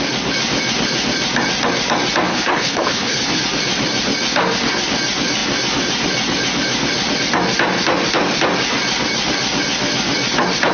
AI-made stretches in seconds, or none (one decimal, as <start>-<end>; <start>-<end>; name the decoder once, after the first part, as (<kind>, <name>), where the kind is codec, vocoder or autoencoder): 2.3-3.4 (codec, HILCodec)